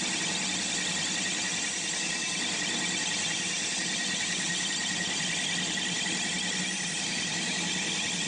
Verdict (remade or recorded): recorded